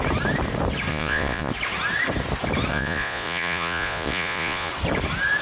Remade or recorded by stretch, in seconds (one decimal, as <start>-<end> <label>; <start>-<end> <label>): 0.0-0.9 recorded; 0.9-1.5 remade; 1.5-2.7 recorded; 2.7-4.7 remade; 4.7-5.4 recorded